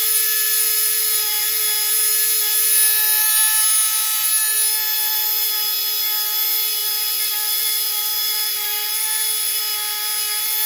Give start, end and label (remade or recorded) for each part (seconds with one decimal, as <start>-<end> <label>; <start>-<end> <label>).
0.0-1.6 remade; 1.6-6.8 recorded; 6.8-9.6 remade; 9.6-10.7 recorded